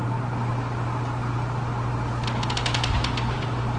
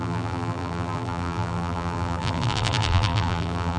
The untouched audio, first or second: first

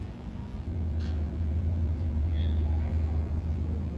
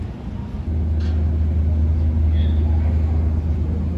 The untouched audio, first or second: second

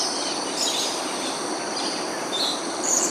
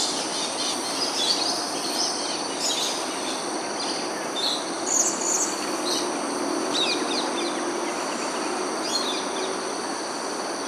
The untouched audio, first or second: second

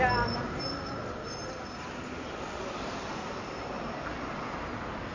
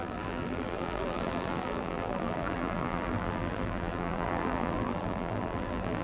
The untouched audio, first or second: first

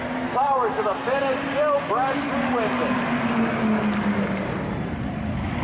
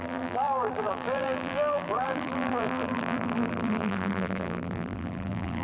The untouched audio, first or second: first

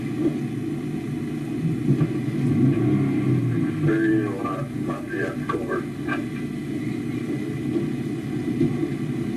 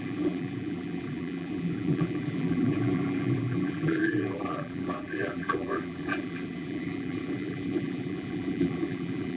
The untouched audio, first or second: first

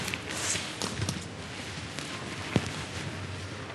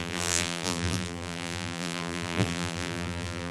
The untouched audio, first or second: first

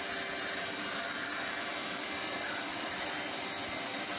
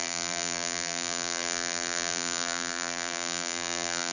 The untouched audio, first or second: first